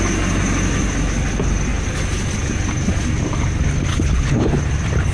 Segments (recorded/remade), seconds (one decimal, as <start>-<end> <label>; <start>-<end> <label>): 0.0-3.9 recorded; 3.9-4.6 remade; 4.6-5.1 recorded